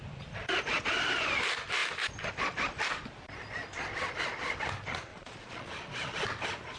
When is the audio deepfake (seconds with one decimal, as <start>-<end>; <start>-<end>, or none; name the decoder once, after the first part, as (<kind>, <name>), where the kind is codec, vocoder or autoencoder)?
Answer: 5.1-5.7 (vocoder, Vocos)